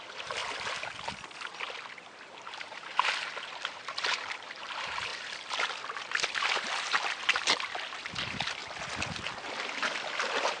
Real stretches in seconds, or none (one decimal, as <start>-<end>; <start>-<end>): 0.4-2.5; 8.6-9.8